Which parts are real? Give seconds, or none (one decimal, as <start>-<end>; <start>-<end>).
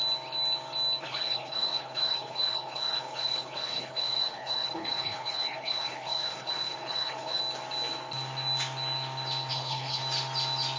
0.0-1.0; 7.4-9.5; 10.0-10.8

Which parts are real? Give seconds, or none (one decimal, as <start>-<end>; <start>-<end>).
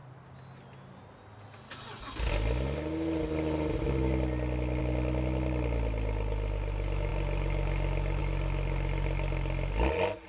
0.0-10.3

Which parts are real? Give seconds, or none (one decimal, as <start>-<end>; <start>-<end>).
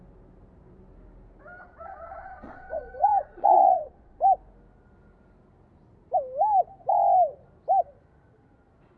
0.0-1.6; 4.2-9.0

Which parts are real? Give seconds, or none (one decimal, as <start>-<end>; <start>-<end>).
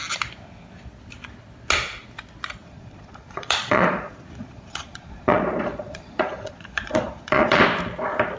0.0-2.6; 7.6-8.4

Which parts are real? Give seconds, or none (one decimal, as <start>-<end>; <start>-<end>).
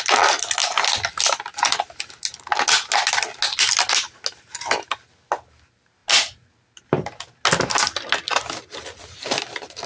0.0-9.9